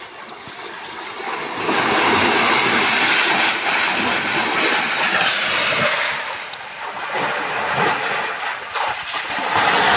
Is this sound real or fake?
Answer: real